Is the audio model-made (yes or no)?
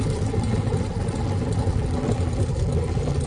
no